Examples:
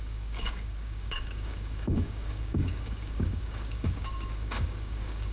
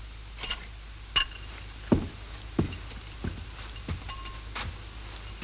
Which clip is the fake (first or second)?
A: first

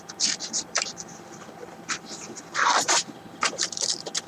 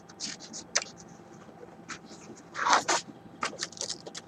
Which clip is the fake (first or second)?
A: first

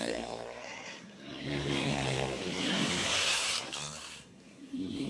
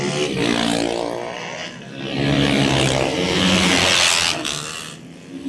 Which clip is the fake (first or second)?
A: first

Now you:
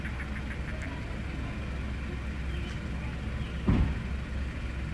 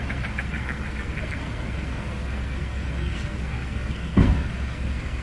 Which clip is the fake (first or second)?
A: second